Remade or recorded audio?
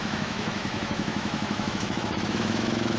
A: remade